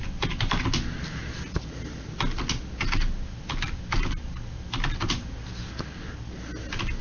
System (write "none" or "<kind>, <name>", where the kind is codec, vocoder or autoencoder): none